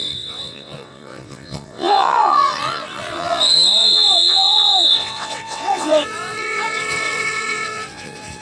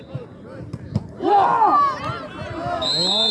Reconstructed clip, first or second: first